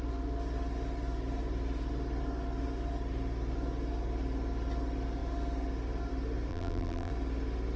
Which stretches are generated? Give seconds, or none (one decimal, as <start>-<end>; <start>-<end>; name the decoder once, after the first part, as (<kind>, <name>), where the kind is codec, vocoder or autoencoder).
6.5-7.1 (vocoder, BigVGAN v2)